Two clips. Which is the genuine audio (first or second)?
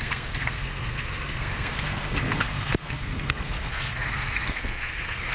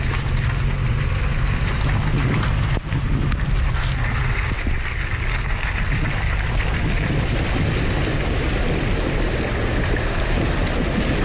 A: second